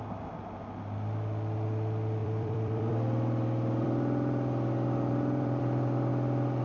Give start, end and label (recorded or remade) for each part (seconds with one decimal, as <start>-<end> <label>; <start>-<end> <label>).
0.0-2.2 recorded; 2.2-6.1 remade; 6.1-6.6 recorded